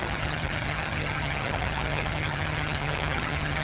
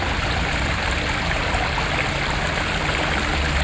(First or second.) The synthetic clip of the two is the first